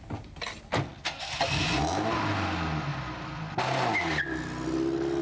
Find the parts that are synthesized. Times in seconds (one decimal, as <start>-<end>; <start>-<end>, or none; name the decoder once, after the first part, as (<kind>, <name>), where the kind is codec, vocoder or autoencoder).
none